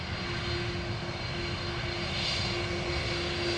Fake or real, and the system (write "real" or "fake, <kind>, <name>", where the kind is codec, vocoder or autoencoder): real